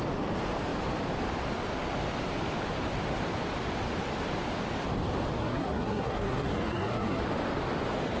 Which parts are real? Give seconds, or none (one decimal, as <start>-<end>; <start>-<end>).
0.0-5.4; 7.2-8.2